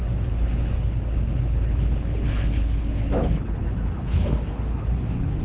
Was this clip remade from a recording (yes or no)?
yes